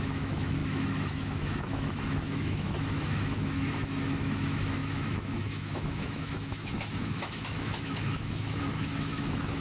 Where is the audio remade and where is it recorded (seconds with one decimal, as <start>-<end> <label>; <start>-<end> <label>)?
0.0-9.6 remade